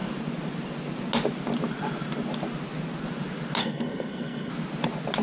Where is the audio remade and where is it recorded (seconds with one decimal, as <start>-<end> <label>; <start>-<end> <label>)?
0.0-3.6 recorded; 3.6-4.5 remade; 4.5-5.2 recorded